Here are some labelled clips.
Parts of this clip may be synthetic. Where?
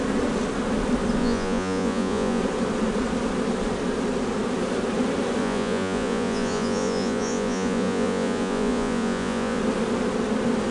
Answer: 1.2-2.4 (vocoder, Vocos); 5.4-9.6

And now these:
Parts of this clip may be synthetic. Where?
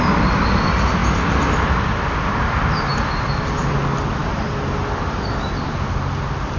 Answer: none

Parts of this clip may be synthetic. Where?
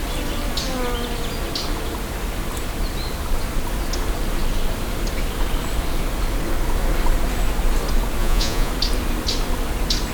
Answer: 8.2-8.7 (vocoder, Vocos)